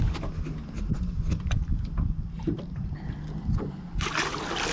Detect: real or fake real